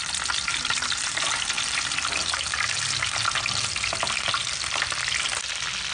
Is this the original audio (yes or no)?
yes